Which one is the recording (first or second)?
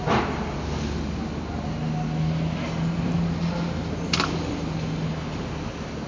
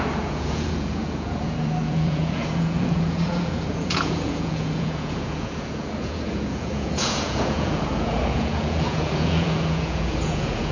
first